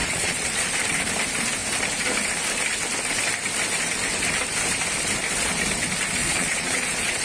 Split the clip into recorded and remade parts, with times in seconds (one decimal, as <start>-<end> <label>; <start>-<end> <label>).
0.0-0.7 remade; 0.7-6.2 recorded; 6.2-7.2 remade